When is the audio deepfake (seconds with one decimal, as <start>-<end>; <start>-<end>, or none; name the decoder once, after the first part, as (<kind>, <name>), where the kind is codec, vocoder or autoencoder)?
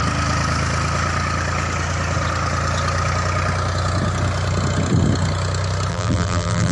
5.9-6.7 (vocoder, BigVGAN v2)